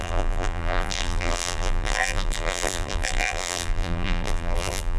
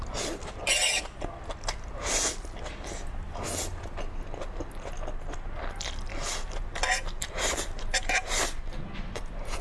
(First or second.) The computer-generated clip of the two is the first